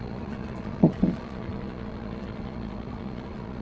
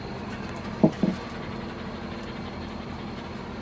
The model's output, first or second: first